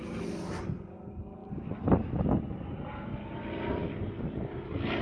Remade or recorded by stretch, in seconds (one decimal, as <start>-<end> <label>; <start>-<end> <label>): 0.0-5.0 recorded